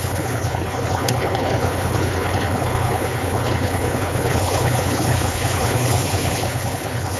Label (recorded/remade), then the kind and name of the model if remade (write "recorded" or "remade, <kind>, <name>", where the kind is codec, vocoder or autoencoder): remade, codec, HILCodec